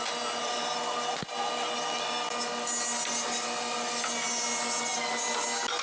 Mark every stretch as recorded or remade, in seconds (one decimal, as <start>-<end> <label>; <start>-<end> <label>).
0.0-5.8 recorded